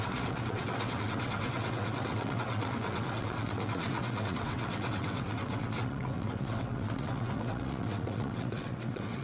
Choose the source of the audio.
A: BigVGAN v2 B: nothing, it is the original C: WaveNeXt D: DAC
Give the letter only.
C